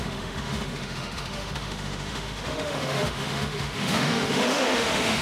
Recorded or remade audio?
remade